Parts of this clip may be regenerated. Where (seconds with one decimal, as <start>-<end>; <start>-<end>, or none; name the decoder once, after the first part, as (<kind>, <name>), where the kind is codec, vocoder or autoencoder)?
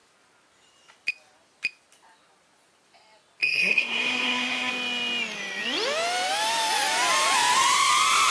3.4-4.7 (codec, SNAC)